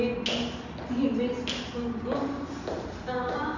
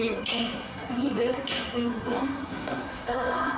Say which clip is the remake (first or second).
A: second